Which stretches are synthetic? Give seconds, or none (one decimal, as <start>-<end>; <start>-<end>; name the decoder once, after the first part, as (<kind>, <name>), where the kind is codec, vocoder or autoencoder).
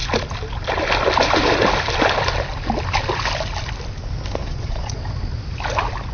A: 4.4-5.0 (vocoder, Vocos)